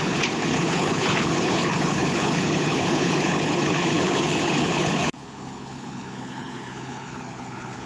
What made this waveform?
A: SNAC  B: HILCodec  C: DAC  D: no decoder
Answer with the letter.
B